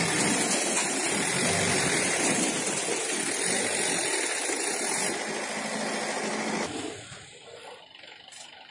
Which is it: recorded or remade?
recorded